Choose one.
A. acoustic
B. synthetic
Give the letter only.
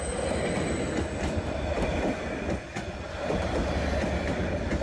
A